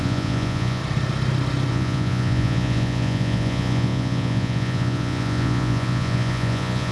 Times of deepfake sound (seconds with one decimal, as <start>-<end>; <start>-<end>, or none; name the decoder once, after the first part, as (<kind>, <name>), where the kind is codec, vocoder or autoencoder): 0.0-0.8 (vocoder, Vocos); 1.7-6.9